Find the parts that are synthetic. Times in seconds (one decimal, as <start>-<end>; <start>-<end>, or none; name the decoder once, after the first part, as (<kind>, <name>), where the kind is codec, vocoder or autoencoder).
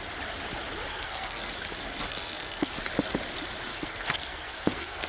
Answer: 0.9-1.5 (codec, SNAC); 2.1-2.7; 3.7-5.1